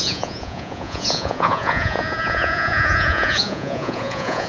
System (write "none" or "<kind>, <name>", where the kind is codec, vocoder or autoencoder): vocoder, Vocos